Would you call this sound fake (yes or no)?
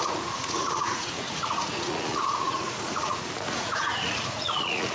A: yes